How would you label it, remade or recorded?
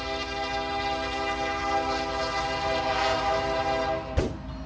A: recorded